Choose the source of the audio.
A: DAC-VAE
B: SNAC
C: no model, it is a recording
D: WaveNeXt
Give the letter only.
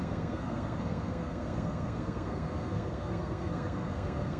B